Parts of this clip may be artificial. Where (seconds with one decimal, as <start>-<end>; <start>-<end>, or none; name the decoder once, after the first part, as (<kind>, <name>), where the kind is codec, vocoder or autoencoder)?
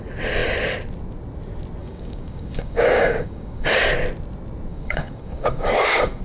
1.8-3.9 (codec, DAC); 4.7-6.2